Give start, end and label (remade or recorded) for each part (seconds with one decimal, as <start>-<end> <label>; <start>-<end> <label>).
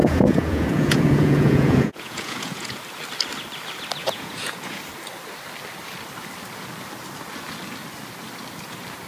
0.0-2.8 remade; 2.8-4.0 recorded; 4.0-4.8 remade; 4.8-9.1 recorded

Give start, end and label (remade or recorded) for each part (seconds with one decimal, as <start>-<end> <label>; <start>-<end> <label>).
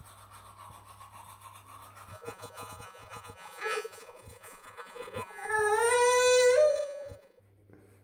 0.0-2.1 recorded; 2.1-5.5 remade; 5.5-6.7 recorded; 6.7-7.4 remade; 7.4-8.0 recorded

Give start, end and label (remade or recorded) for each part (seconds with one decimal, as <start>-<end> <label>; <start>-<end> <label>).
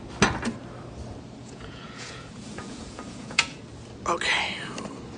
0.0-1.4 recorded; 1.4-3.6 remade; 3.6-5.2 recorded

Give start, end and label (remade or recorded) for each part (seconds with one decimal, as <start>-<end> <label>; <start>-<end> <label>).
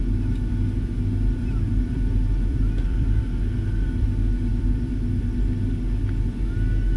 0.0-1.4 recorded; 1.4-3.2 remade; 3.2-4.5 recorded; 4.5-5.2 remade; 5.2-7.0 recorded